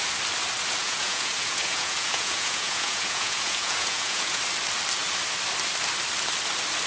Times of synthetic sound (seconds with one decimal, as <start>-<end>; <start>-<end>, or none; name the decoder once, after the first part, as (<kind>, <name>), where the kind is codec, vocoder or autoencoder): 0.8-4.4 (vocoder, Vocos)